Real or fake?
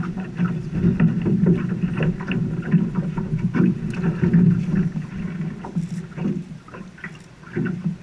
real